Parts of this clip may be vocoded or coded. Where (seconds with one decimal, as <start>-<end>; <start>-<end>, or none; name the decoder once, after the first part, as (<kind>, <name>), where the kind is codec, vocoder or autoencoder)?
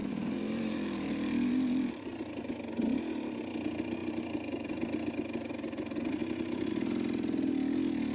0.0-2.1 (vocoder, BigVGAN v2)